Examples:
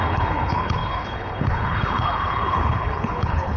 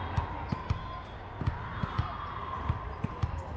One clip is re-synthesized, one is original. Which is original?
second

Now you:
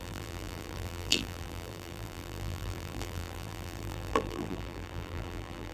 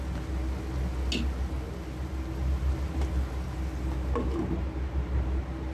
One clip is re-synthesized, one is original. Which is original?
second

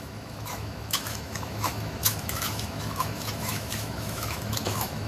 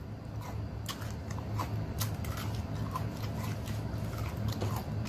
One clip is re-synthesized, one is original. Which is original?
second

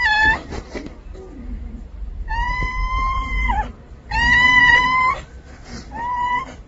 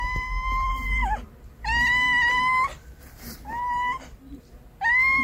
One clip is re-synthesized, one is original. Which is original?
second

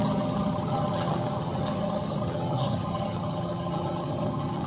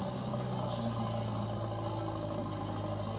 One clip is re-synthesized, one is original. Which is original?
second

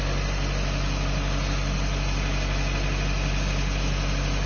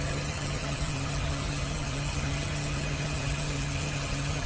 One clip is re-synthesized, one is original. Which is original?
first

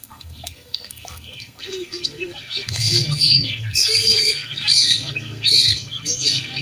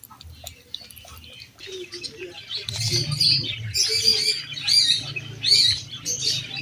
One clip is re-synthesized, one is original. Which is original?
second